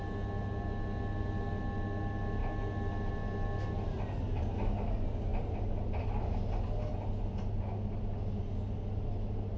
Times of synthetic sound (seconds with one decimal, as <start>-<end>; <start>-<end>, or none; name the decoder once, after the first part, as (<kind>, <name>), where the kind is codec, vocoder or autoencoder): none